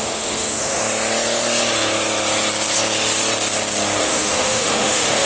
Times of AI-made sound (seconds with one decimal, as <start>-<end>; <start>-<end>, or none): 0.0-0.8; 4.0-5.3